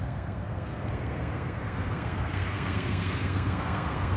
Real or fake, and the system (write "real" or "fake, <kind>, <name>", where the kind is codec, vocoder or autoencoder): fake, codec, SNAC